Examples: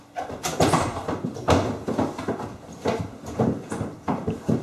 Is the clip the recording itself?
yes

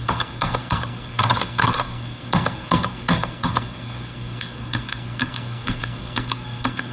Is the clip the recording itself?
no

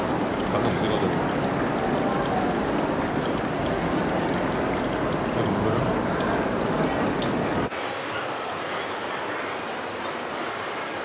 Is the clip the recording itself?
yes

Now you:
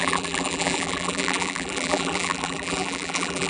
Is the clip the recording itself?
no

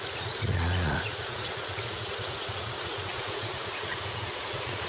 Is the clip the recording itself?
no